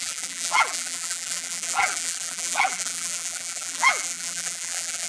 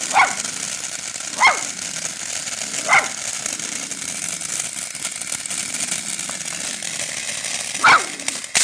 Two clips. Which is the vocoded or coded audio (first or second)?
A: first